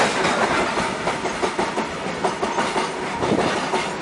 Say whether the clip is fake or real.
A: real